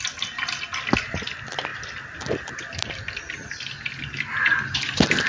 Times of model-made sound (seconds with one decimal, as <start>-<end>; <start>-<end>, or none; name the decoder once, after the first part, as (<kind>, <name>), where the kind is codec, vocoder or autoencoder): none